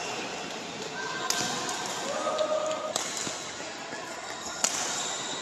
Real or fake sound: real